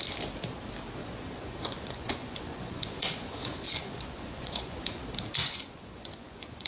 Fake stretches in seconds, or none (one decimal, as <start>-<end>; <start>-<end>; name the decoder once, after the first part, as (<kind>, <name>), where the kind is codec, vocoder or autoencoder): 1.0-5.0 (vocoder, Vocos); 5.4-6.7

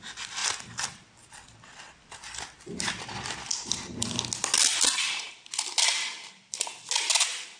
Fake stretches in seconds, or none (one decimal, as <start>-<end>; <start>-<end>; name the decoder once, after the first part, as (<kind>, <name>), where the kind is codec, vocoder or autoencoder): 0.0-3.5 (vocoder, BigVGAN v2); 5.0-6.7

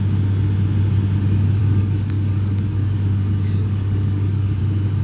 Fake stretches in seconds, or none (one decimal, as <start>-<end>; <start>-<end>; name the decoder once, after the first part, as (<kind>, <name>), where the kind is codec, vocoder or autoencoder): 1.6-4.6 (codec, DAC)

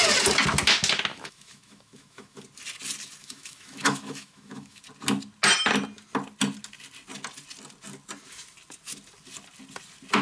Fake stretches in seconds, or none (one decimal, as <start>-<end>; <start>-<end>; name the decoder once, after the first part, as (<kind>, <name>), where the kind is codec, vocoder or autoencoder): 1.1-2.4 (autoencoder, DAC-VAE); 3.2-4.8

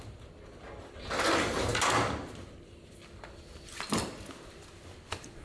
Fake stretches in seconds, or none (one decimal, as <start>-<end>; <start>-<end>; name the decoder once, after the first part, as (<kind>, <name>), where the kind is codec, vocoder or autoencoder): none

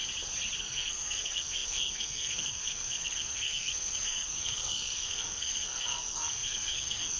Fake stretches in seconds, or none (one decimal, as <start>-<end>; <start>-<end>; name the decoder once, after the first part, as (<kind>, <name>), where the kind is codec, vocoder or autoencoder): 0.6-7.2 (codec, SNAC)

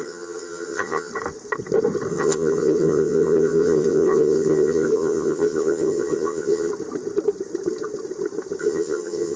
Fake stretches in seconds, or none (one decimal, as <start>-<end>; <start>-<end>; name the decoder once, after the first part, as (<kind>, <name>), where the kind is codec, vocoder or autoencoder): 0.0-1.1 (vocoder, HiFi-GAN); 2.1-6.7; 8.6-9.4